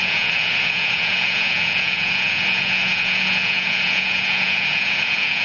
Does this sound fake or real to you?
fake